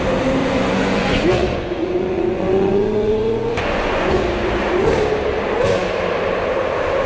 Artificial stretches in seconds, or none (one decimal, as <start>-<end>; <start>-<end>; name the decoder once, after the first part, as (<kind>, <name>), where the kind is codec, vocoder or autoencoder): 0.4-4.2 (vocoder, Vocos)